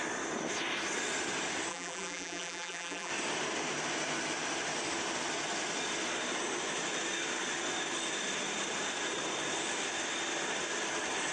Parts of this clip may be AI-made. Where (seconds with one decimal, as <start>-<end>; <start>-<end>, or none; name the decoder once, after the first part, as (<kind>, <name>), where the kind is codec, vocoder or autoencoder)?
1.7-3.1 (vocoder, BigVGAN v2)